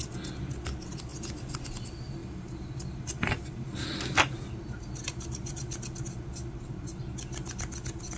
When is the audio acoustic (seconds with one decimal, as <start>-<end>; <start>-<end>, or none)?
0.0-8.2